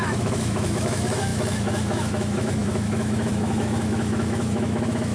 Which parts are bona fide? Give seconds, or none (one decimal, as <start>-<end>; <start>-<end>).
none